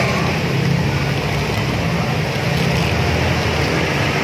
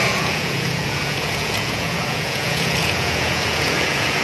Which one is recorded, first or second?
first